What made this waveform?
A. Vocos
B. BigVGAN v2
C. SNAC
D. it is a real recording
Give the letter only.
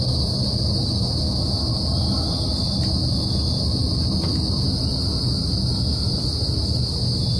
D